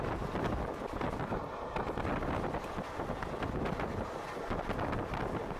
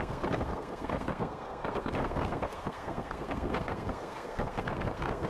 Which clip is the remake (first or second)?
second